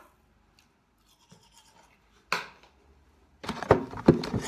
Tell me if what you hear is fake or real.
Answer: real